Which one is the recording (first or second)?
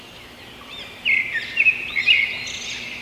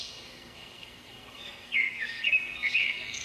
first